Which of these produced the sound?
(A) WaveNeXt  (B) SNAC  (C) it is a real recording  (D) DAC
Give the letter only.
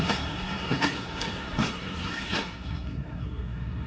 B